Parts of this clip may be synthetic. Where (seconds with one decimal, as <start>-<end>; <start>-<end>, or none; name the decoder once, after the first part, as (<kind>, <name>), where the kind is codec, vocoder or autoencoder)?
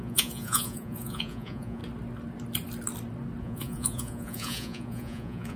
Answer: 0.0-1.8 (vocoder, Vocos); 3.4-5.6